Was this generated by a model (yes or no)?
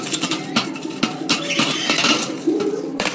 no